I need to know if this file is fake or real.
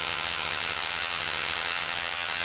fake